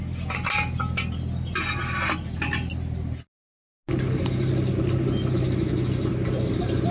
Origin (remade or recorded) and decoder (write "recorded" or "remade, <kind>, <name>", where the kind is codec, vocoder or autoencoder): recorded